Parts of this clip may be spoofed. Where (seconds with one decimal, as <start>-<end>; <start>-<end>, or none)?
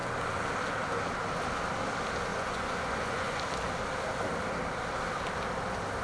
2.3-3.4